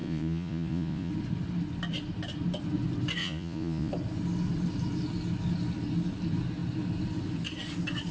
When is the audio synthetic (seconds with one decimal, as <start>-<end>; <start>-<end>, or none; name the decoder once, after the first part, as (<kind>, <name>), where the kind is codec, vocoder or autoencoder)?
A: 0.0-1.1 (vocoder, Vocos); 3.2-3.9